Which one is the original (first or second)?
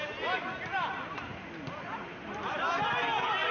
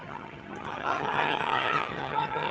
first